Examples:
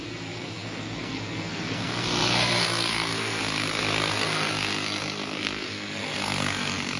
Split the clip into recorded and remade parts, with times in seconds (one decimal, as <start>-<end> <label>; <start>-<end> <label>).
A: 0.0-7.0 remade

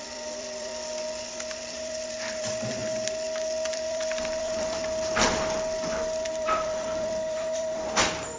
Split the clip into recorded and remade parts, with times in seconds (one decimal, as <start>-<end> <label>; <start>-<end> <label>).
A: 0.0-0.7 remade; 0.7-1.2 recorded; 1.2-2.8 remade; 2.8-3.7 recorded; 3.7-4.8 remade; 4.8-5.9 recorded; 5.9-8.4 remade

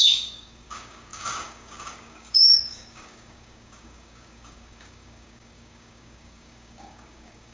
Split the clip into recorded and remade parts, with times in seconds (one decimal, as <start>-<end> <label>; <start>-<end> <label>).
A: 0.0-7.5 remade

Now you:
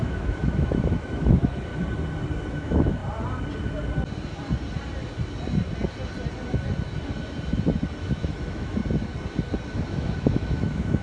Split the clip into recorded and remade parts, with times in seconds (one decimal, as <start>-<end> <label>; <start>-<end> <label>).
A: 0.0-1.7 remade; 1.7-2.5 recorded; 2.5-3.0 remade; 3.0-8.0 recorded; 8.0-8.8 remade; 8.8-9.9 recorded; 9.9-11.0 remade